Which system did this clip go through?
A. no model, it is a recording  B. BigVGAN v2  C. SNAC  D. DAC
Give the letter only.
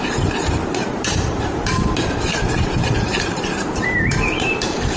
B